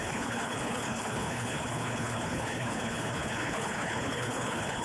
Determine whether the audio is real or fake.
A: fake